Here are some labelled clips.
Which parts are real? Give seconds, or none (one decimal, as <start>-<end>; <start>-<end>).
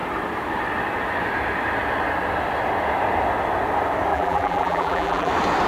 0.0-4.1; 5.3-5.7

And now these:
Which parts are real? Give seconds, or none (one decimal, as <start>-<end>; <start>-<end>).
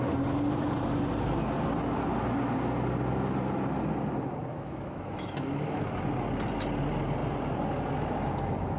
0.0-4.5; 5.8-8.8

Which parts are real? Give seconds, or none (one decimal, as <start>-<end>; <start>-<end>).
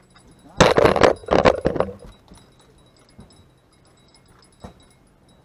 0.0-5.4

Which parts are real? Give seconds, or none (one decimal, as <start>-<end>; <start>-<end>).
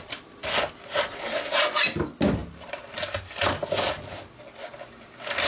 0.0-5.5